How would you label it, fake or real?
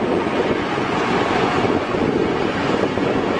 fake